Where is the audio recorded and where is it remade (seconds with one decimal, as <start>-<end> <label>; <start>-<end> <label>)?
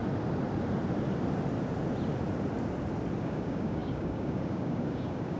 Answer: 0.0-3.2 recorded; 3.2-5.4 remade